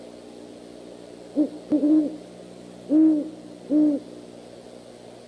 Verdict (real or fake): real